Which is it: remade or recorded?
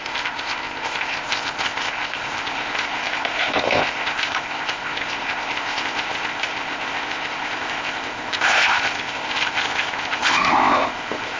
remade